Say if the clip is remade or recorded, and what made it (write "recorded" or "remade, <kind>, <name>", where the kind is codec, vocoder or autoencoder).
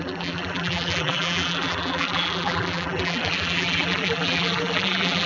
remade, vocoder, BigVGAN v2